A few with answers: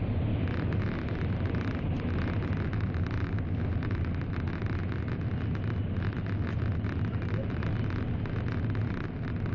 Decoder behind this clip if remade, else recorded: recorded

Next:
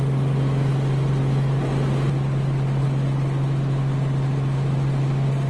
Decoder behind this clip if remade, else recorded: recorded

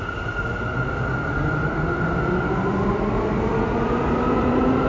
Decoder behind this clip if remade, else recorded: recorded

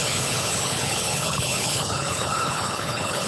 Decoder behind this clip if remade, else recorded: remade, codec, HILCodec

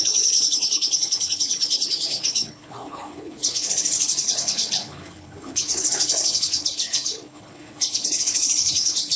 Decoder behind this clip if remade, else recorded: remade, codec, HILCodec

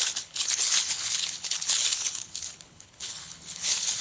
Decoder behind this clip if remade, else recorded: remade, codec, HILCodec